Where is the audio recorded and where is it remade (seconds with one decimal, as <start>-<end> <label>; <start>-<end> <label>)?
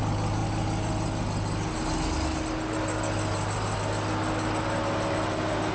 0.0-5.7 recorded